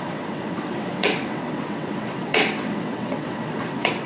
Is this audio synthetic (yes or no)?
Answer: yes